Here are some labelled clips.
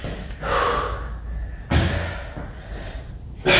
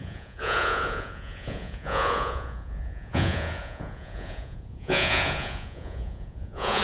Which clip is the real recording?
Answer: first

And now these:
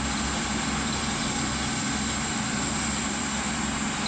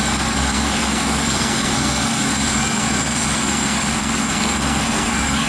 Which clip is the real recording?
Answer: first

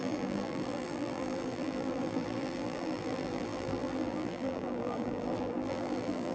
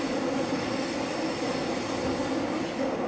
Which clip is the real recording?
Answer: second